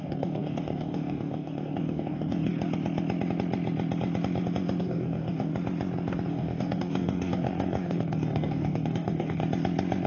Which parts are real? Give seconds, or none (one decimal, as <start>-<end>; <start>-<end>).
2.5-4.8; 5.5-6.3; 9.4-10.1